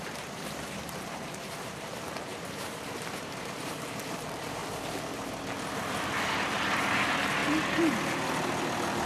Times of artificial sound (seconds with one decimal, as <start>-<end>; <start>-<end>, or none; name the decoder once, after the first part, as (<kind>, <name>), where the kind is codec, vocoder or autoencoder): 0.0-4.6 (vocoder, BigVGAN v2); 7.0-7.4